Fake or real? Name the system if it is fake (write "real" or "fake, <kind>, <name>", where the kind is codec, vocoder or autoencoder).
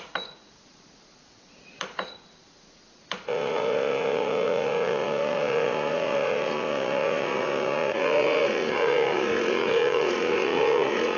fake, vocoder, Vocos